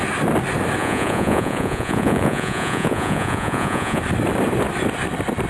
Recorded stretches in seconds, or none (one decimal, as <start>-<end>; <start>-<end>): 0.0-0.8; 4.0-5.5